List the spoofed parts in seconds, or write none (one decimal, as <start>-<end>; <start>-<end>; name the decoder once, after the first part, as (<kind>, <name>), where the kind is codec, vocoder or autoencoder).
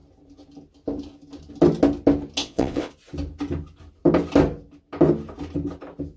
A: 2.4-2.9 (vocoder, WaveNeXt)